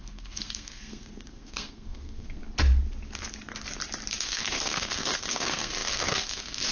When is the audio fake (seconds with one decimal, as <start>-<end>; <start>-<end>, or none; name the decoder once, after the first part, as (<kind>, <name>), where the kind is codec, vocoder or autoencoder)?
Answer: 0.0-2.4 (codec, SNAC); 4.2-6.7